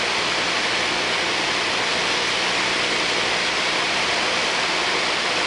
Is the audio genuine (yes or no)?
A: yes